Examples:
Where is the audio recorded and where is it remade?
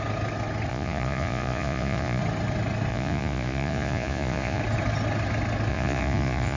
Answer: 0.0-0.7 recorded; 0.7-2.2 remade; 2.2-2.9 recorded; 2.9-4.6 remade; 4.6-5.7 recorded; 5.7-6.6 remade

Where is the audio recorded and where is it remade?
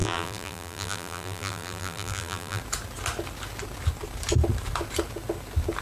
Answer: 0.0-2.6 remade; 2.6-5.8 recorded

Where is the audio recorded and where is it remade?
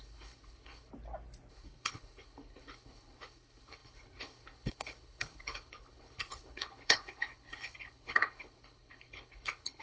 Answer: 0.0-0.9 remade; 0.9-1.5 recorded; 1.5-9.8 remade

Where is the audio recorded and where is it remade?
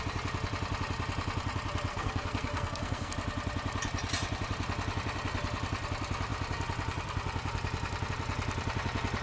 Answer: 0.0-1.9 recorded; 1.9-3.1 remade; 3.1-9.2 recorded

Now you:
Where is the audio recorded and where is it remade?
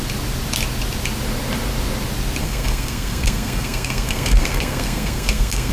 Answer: 0.0-2.4 recorded; 2.4-5.7 remade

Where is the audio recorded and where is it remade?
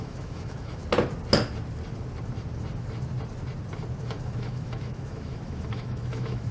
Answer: 0.0-0.8 remade; 0.8-4.0 recorded; 4.0-6.5 remade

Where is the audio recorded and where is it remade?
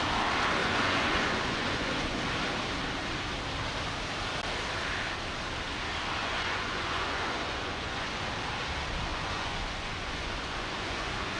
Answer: 0.0-0.6 recorded; 0.6-2.2 remade; 2.2-6.2 recorded; 6.2-8.3 remade; 8.3-9.1 recorded; 9.1-11.4 remade